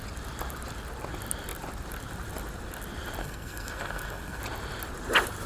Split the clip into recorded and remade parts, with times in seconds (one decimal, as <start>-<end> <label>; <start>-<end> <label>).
0.0-3.2 recorded; 3.2-4.4 remade; 4.4-5.5 recorded